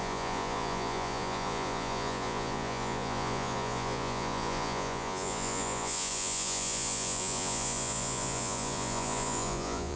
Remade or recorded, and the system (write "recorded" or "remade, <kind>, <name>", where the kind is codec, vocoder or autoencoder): remade, vocoder, Vocos